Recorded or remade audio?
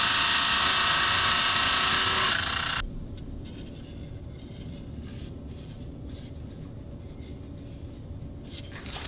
recorded